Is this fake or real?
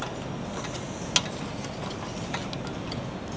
real